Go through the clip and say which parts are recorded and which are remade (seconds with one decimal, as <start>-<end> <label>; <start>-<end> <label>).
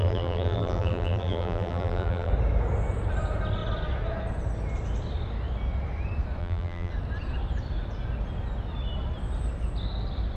0.0-2.3 remade; 2.3-6.4 recorded; 6.4-6.9 remade; 6.9-10.4 recorded